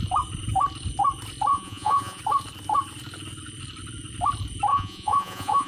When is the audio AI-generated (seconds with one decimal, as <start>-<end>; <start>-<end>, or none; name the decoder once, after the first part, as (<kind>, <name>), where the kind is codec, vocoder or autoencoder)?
1.5-2.2 (vocoder, Vocos); 4.7-5.7